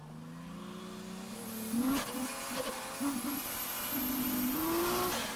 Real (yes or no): yes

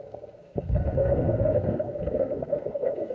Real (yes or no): no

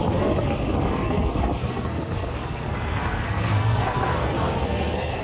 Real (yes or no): no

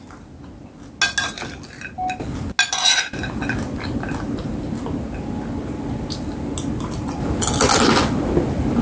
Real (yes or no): yes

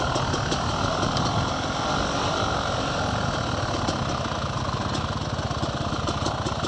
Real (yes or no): yes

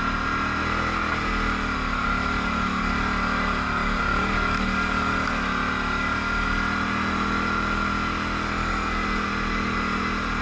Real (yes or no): yes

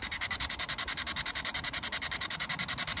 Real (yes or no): no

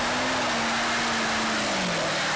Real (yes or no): yes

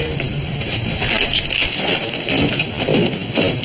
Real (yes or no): no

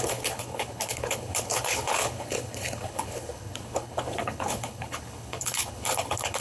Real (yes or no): no